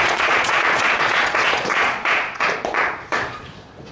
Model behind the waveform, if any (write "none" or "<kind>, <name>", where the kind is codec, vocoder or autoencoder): vocoder, Vocos